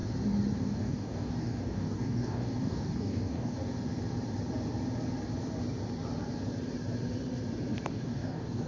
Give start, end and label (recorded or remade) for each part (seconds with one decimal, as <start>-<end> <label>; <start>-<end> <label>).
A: 0.0-0.6 recorded; 0.6-3.6 remade; 3.6-7.9 recorded; 7.9-8.7 remade